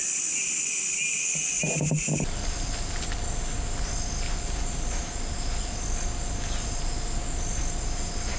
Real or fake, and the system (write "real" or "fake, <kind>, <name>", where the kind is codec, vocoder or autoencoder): real